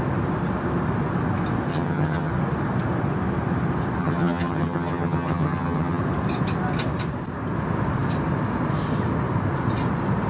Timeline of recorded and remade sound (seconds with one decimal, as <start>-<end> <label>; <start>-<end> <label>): 0.0-1.7 recorded; 1.7-2.3 remade; 2.3-4.0 recorded; 4.0-6.0 remade; 6.0-10.3 recorded